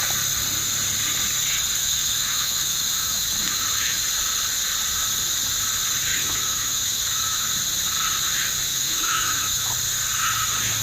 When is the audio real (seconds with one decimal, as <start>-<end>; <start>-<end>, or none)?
0.0-1.8; 4.0-6.1; 7.5-8.7; 9.7-10.8